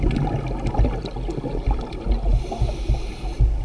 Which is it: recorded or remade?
recorded